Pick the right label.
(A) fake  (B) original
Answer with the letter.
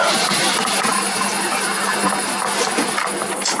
B